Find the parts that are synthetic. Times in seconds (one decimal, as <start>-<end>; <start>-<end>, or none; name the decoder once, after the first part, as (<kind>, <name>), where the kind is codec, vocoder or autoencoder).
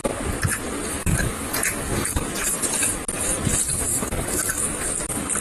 1.0-2.3 (codec, DAC); 3.9-4.8